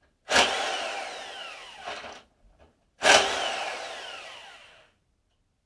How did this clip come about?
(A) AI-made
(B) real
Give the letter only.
A